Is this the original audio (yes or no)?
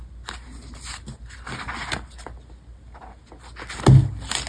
yes